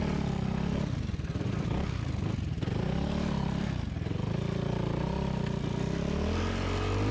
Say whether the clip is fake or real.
real